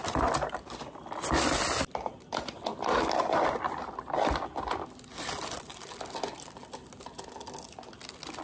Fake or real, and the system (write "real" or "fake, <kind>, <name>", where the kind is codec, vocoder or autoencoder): real